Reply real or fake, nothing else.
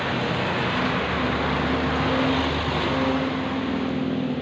real